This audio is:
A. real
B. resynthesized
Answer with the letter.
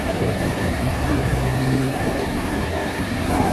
B